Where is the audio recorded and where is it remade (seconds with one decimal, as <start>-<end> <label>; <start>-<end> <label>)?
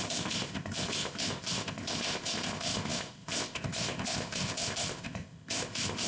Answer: 0.0-6.1 remade